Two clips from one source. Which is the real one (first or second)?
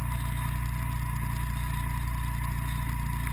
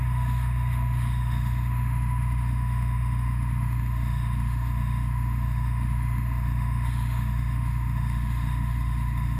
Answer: first